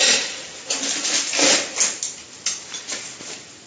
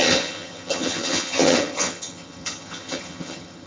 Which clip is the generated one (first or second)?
second